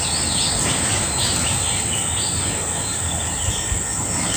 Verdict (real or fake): real